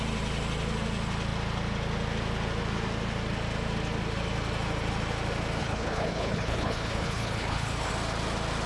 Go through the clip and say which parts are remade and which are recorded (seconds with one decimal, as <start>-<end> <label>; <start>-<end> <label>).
0.0-5.6 recorded; 5.6-7.9 remade; 7.9-8.7 recorded